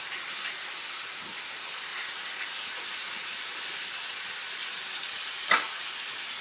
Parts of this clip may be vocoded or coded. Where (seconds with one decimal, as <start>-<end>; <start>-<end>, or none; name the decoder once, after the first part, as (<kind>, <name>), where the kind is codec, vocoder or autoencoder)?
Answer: none